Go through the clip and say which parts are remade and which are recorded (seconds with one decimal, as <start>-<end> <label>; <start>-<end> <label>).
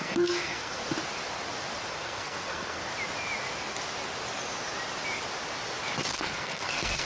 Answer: 0.0-0.8 remade; 0.8-1.9 recorded; 1.9-2.9 remade; 2.9-6.1 recorded; 6.1-7.1 remade